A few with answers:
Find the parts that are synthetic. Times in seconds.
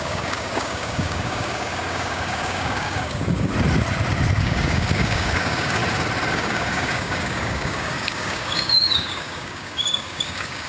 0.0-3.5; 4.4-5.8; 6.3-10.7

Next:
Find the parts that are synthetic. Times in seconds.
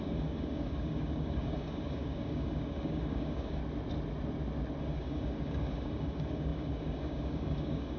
0.0-3.6; 4.8-8.0